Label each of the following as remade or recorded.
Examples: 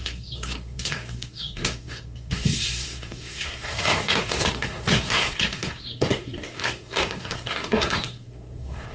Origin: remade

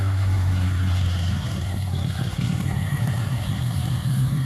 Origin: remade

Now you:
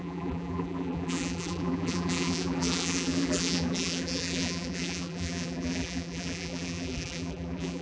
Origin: remade